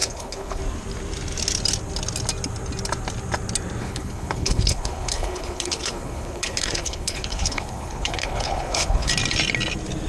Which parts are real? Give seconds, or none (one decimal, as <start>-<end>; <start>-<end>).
0.6-3.8; 9.1-10.1